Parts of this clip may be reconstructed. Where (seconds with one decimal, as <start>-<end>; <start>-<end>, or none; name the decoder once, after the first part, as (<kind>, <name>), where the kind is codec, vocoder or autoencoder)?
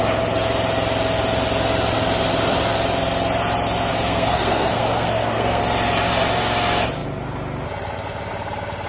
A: 3.9-5.6 (codec, SNAC)